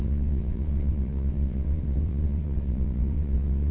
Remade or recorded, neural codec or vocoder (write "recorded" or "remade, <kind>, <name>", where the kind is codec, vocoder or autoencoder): remade, vocoder, WaveNeXt